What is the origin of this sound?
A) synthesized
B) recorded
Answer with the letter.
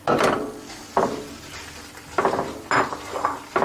B